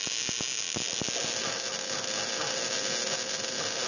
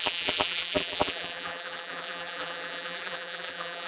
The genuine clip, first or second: first